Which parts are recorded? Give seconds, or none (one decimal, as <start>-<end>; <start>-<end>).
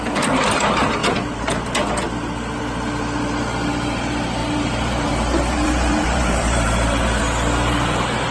0.0-4.4; 7.2-8.3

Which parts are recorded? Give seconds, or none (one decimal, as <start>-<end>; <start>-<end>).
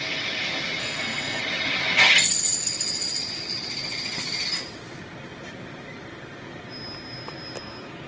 0.0-0.8; 1.4-8.1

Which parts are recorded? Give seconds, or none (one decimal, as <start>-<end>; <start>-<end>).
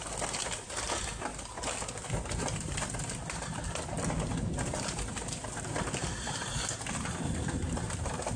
0.0-8.4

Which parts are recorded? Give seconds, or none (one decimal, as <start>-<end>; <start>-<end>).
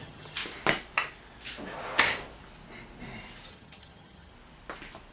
0.4-3.5; 4.3-5.1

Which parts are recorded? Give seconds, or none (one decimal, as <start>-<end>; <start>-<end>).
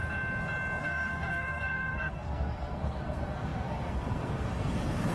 0.0-0.8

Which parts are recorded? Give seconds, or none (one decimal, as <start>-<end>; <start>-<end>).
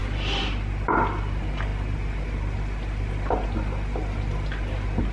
0.0-5.1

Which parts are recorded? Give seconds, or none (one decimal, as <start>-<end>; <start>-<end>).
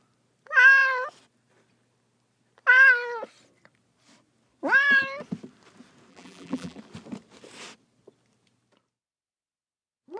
0.0-6.1; 6.8-10.2